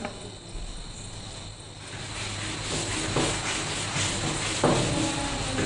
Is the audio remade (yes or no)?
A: no